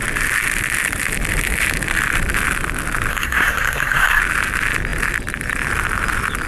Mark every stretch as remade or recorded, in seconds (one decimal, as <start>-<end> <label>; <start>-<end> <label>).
0.0-3.1 recorded; 3.1-4.2 remade; 4.2-6.5 recorded